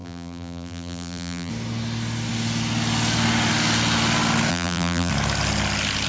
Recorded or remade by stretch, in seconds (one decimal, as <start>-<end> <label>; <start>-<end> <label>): 0.0-1.5 remade; 1.5-4.5 recorded; 4.5-5.1 remade; 5.1-6.1 recorded